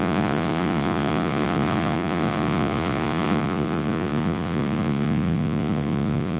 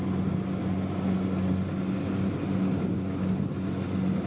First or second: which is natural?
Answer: second